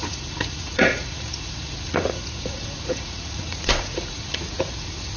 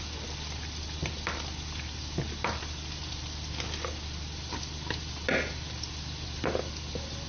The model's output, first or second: first